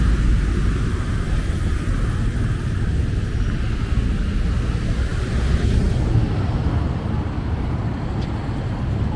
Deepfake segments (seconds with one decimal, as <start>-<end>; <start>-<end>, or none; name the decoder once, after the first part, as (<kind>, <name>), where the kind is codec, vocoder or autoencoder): none